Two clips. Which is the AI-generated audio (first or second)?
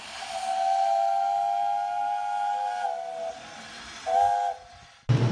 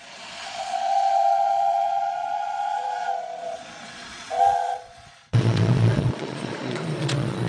second